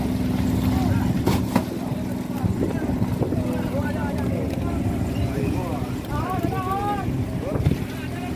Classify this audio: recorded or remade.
recorded